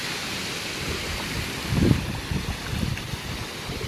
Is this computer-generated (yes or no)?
yes